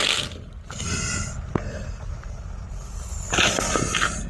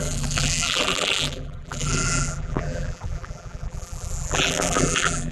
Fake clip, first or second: second